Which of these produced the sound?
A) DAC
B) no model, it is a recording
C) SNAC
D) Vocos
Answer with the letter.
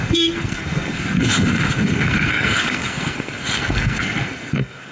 C